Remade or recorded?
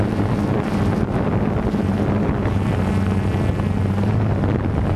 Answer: recorded